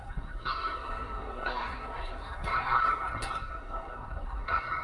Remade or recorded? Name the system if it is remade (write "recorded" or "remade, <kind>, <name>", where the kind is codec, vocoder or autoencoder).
remade, codec, SNAC